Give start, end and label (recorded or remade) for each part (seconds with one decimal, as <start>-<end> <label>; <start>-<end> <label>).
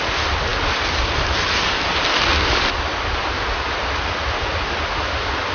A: 0.0-5.5 recorded